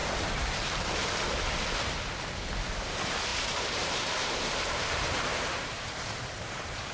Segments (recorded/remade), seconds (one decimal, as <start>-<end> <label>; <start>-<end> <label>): 0.0-0.7 remade; 0.7-3.3 recorded; 3.3-6.9 remade